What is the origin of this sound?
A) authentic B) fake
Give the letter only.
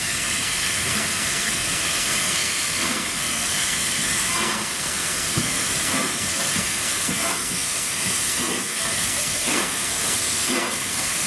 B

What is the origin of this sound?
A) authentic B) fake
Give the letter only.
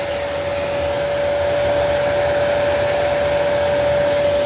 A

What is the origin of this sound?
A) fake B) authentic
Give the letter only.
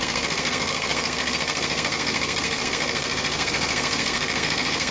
A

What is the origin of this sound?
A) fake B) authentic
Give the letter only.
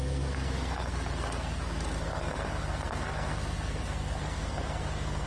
A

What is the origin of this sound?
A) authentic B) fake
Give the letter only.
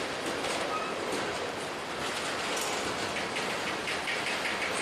A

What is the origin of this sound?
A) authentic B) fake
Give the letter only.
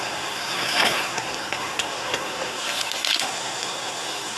B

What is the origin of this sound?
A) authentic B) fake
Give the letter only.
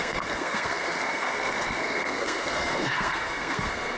B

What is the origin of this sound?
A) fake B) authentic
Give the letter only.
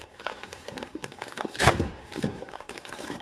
A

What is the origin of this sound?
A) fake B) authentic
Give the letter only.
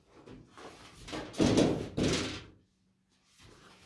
B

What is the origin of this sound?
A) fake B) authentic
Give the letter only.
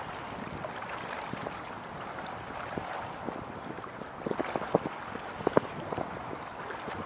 B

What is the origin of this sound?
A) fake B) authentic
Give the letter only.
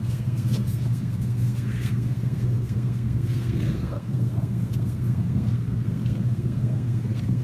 A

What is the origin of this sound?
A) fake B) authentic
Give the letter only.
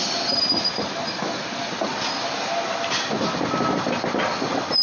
B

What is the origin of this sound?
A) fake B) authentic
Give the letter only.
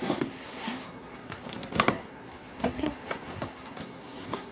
A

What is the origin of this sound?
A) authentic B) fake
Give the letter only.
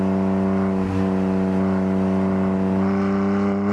A